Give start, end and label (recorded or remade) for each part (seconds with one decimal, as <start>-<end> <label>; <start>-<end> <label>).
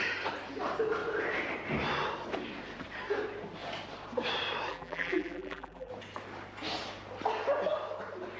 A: 0.0-4.7 recorded; 4.7-5.9 remade; 5.9-8.4 recorded